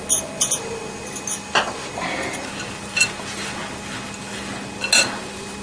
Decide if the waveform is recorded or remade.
recorded